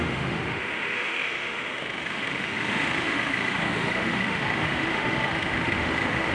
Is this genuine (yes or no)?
no